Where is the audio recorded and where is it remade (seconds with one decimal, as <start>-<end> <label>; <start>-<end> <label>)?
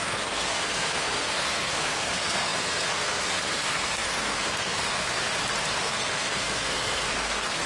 0.0-5.2 remade; 5.2-5.8 recorded; 5.8-7.7 remade